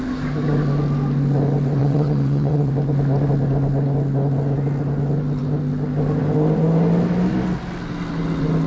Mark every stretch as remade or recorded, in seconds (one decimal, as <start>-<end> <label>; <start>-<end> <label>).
0.0-1.8 recorded; 1.8-2.7 remade; 2.7-8.7 recorded